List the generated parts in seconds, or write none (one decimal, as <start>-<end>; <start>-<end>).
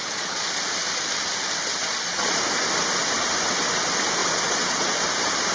0.0-0.5; 1.8-2.4; 4.2-5.0